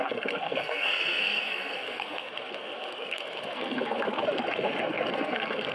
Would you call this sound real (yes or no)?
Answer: no